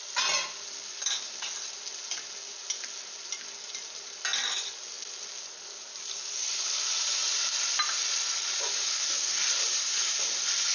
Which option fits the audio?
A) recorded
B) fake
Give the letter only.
A